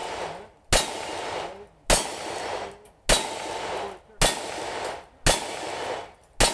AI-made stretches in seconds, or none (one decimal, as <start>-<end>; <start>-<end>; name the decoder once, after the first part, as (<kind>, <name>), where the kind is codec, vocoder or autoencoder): none